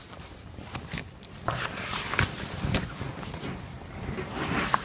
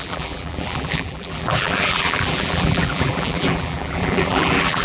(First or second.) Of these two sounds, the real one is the first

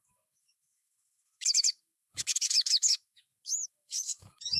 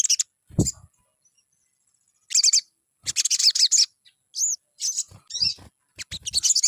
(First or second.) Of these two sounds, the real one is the second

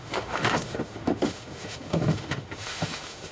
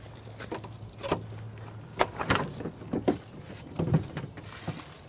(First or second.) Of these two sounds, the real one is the second